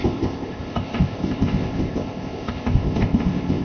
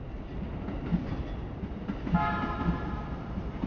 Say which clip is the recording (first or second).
second